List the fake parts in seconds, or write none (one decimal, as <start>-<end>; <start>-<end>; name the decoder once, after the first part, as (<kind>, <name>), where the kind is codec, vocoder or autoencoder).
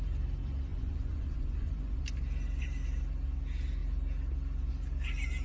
0.7-2.0 (vocoder, Vocos)